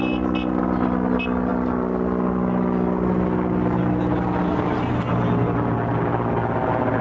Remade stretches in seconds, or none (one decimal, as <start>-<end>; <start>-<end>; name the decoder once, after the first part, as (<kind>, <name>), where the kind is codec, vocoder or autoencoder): none